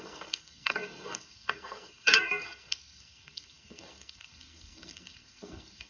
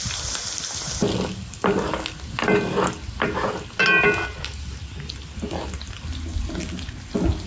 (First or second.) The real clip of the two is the second